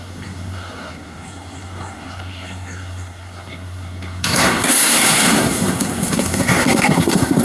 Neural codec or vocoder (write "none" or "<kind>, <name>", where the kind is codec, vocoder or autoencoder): codec, SNAC